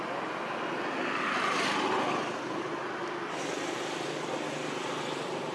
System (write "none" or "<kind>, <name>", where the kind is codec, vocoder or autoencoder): none